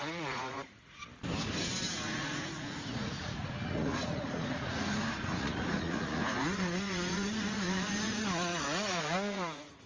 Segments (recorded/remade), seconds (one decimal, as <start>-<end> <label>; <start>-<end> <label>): 0.0-1.0 remade; 1.0-1.9 recorded; 1.9-9.9 remade